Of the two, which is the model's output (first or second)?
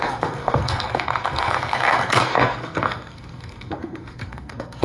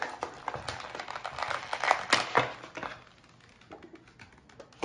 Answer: first